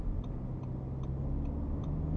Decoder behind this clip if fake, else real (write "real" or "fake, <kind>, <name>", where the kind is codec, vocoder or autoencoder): real